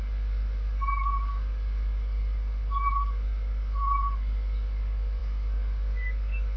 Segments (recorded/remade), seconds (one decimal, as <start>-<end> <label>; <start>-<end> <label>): 0.0-6.6 remade